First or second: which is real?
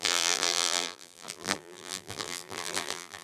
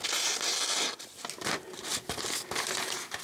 second